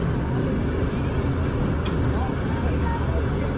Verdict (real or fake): real